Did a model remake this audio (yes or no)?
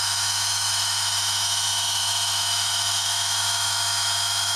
yes